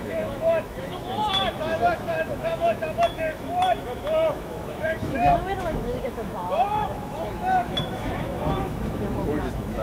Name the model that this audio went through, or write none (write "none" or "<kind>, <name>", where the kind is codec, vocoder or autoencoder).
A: autoencoder, DAC-VAE